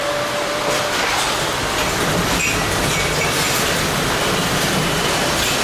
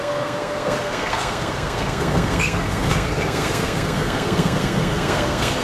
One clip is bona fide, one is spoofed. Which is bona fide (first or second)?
first